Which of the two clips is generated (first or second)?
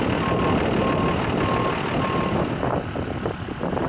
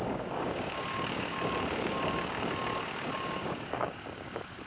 second